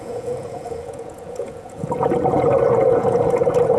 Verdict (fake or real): fake